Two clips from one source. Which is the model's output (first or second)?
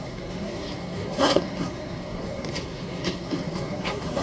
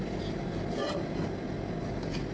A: first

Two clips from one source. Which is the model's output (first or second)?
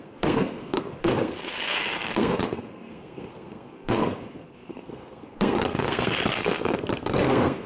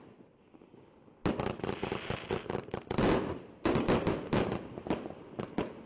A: first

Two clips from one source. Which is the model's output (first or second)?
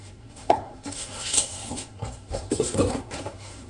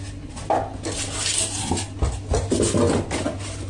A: first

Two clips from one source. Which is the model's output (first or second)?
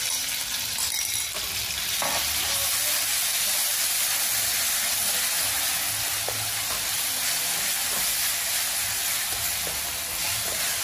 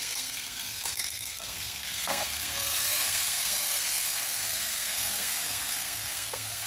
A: second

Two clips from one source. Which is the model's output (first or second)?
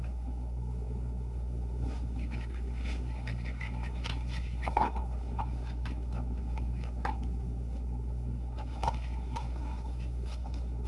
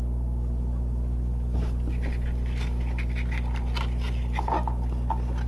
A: first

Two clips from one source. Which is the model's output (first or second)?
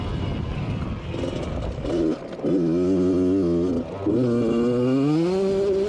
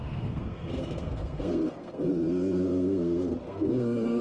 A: second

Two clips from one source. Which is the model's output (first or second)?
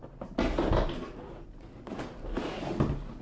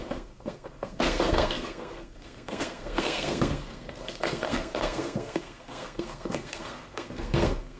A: second